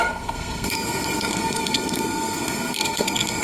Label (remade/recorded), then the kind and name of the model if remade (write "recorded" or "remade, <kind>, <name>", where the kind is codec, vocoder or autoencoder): remade, codec, SNAC